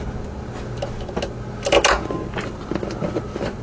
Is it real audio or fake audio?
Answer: real